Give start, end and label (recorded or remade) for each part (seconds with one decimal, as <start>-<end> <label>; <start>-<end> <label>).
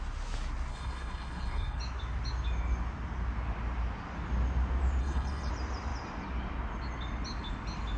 0.0-0.7 recorded; 0.7-1.8 remade; 1.8-5.0 recorded; 5.0-5.5 remade; 5.5-8.0 recorded